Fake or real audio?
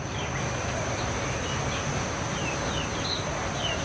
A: real